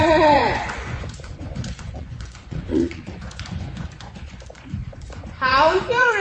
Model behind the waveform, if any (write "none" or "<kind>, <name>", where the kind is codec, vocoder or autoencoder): vocoder, Vocos